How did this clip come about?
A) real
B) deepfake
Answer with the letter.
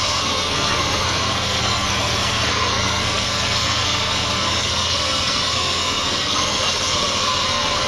B